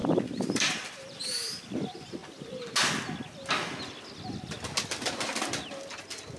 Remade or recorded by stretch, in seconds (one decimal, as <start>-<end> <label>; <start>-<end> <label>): 0.0-1.3 remade; 1.3-6.4 recorded